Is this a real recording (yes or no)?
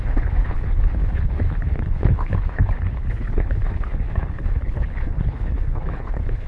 no